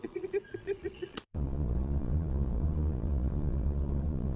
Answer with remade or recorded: remade